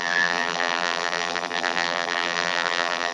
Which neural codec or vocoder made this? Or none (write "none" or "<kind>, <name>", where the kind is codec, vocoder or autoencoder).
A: vocoder, BigVGAN v2